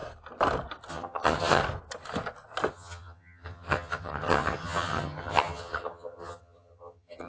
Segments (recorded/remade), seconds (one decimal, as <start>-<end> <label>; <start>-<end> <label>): 0.0-0.9 recorded; 0.9-1.6 remade; 1.6-2.7 recorded; 2.7-7.3 remade